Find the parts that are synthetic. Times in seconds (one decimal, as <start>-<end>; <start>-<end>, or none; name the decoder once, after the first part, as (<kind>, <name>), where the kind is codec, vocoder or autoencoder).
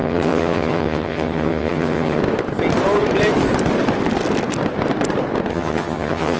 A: 0.0-2.2 (vocoder, HiFi-GAN); 5.5-6.4